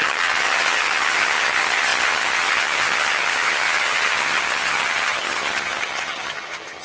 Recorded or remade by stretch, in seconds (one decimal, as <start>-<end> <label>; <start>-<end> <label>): 0.0-6.8 remade